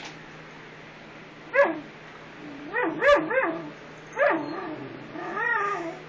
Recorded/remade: recorded